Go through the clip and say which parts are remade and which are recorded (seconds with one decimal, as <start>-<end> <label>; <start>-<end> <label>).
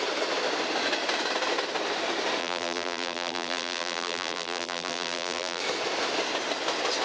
0.0-2.4 recorded; 2.4-5.6 remade; 5.6-7.0 recorded